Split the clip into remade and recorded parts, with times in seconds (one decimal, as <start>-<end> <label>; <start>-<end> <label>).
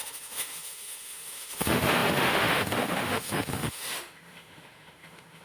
0.0-5.4 remade